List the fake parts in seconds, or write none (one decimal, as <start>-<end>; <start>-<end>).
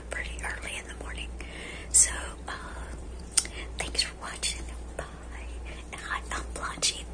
1.8-3.6